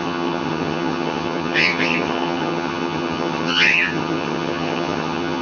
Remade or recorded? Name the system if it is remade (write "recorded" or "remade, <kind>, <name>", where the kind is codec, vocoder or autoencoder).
remade, vocoder, HiFi-GAN